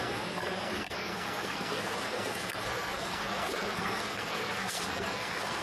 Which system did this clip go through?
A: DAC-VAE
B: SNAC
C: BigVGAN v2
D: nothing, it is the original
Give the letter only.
B